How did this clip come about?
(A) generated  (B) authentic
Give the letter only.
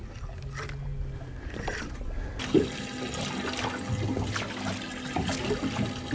B